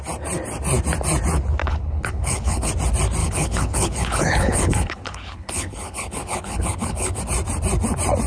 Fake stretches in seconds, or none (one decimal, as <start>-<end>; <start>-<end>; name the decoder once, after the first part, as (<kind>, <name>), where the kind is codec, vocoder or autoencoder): 1.6-2.7 (codec, HILCodec); 3.2-7.2